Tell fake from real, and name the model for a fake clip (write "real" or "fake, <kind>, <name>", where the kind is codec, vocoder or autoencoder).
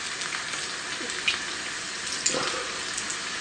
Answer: real